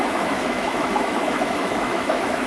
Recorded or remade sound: remade